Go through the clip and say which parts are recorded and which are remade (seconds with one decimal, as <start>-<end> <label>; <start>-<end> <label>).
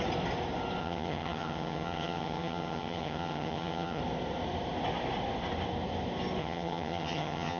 0.0-0.8 recorded; 0.8-4.0 remade; 4.0-6.4 recorded; 6.4-7.6 remade